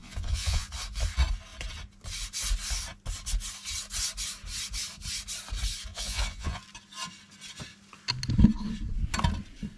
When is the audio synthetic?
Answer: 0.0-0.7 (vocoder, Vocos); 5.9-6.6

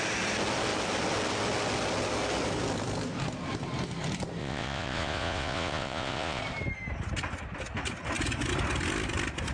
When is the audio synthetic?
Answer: 4.4-6.4 (vocoder, Vocos)

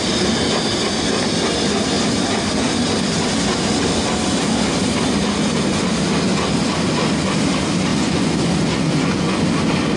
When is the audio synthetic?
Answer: 7.9-9.4 (vocoder, Vocos)

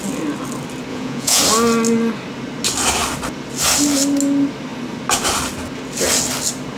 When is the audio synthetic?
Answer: 0.9-1.4 (vocoder, Vocos)

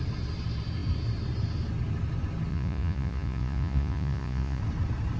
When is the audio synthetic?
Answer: 2.5-4.6 (vocoder, Vocos)

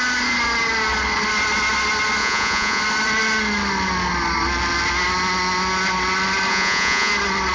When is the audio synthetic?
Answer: 2.2-2.8 (vocoder, Vocos); 6.5-7.1